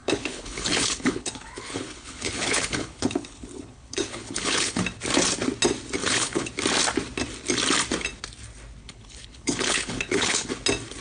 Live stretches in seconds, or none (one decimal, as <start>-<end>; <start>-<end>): 4.8-6.0; 6.5-8.8; 10.5-11.0